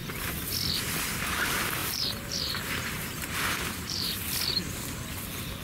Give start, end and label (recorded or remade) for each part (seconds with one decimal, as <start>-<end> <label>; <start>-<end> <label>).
0.0-1.8 recorded; 1.8-4.2 remade; 4.2-5.6 recorded